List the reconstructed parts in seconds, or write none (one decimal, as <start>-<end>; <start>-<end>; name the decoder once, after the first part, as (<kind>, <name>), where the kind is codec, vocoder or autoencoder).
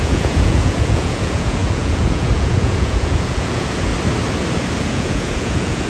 0.0-3.9 (vocoder, Vocos); 4.8-5.9